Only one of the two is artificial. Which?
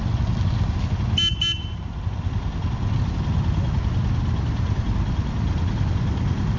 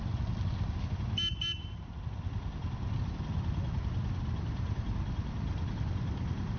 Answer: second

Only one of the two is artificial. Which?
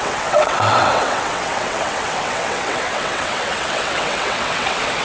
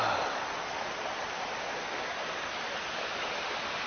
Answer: first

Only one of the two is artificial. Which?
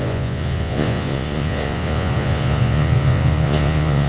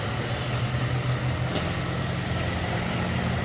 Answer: first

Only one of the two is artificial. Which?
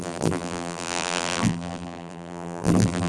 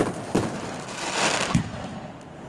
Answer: first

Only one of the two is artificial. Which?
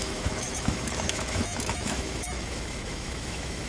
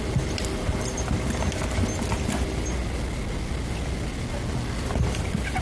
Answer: first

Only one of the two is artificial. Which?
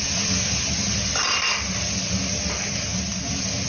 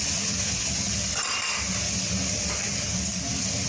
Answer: second